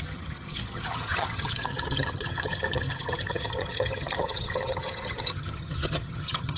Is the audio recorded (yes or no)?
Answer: no